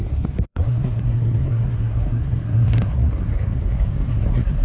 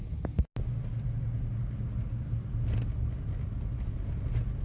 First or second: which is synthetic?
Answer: first